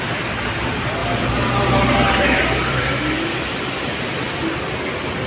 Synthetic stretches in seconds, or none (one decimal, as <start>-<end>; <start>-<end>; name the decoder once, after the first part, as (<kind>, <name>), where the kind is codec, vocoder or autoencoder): 1.0-2.9 (vocoder, BigVGAN v2)